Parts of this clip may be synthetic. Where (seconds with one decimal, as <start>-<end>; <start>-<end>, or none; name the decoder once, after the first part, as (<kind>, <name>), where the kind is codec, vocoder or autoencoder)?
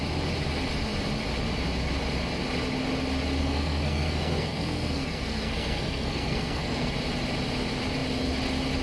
3.4-6.9 (codec, SNAC)